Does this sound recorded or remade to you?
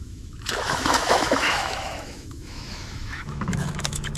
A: remade